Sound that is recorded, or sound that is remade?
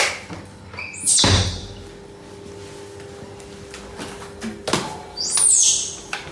recorded